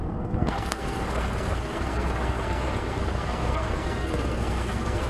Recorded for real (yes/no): no